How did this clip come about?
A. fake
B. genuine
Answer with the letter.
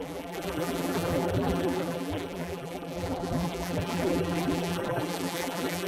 A